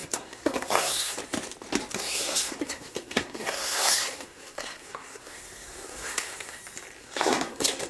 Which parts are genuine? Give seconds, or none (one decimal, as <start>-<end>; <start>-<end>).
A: 1.2-1.9; 6.6-7.0